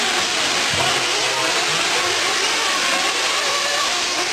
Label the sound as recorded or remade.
recorded